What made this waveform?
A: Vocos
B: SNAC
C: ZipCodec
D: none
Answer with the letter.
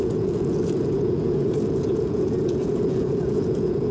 A